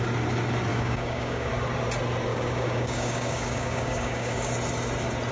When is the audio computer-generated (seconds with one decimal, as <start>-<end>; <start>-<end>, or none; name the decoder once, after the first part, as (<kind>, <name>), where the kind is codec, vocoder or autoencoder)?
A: 0.7-1.5 (codec, DAC); 2.3-4.5